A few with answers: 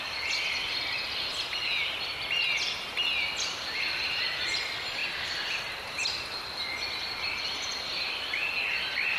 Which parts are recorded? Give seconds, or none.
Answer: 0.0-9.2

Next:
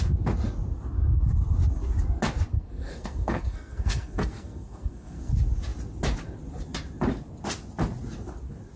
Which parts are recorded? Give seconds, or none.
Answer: 0.0-2.5; 5.3-8.8